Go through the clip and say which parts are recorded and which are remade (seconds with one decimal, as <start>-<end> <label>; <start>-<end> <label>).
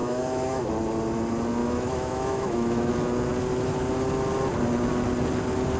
0.0-0.7 remade; 0.7-1.6 recorded; 1.6-2.9 remade; 2.9-5.8 recorded